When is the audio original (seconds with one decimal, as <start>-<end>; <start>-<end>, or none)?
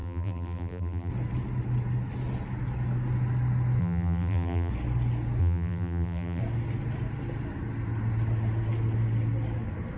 1.1-3.8; 4.7-5.4; 6.4-10.0